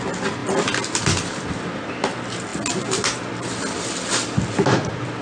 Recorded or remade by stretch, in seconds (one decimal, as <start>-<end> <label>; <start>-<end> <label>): 0.0-5.2 recorded